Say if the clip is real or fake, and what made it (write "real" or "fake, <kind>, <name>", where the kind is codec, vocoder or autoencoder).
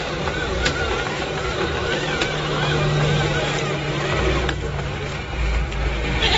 real